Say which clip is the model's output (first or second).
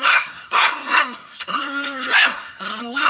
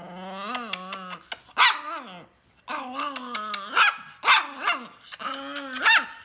first